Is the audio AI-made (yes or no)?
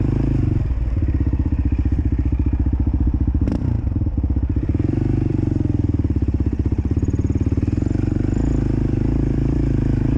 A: yes